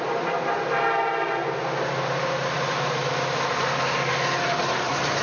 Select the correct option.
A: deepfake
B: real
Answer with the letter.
B